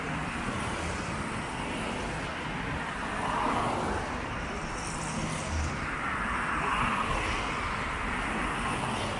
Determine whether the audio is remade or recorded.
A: recorded